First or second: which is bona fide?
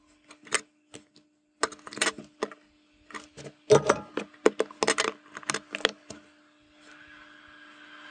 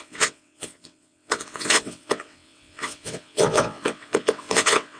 first